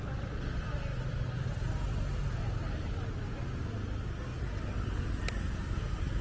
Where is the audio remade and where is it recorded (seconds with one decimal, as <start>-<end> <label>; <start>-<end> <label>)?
0.0-6.2 recorded